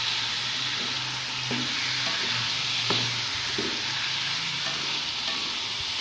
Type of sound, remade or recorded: recorded